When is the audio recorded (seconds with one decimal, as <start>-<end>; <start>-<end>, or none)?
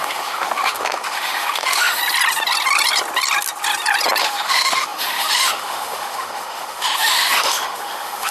2.0-4.2